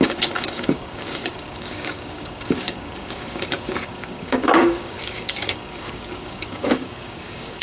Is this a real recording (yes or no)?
no